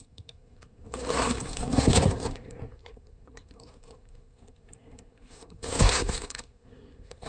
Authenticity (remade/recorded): remade